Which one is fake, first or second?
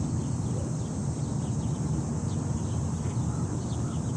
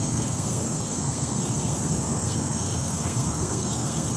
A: second